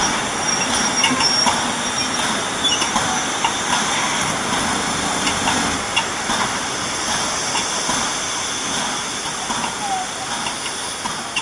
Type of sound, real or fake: real